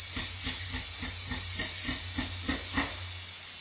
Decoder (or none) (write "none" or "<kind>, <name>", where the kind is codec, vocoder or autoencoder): none